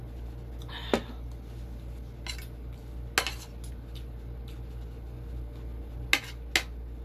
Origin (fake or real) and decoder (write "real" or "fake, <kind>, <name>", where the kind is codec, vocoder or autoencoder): real